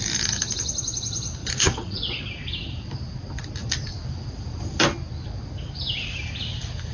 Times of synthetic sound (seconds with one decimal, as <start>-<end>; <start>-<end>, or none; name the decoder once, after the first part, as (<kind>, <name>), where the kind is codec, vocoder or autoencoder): 1.4-2.2 (vocoder, Vocos)